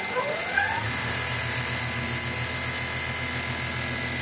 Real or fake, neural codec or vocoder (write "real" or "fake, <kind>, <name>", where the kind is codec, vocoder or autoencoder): real